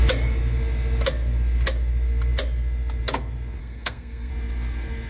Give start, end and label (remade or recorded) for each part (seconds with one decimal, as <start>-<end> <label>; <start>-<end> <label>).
0.0-3.6 recorded; 3.6-4.3 remade; 4.3-5.1 recorded